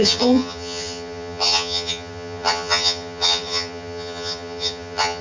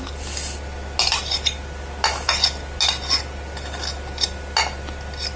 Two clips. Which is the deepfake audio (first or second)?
first